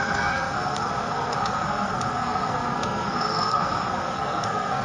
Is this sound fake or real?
fake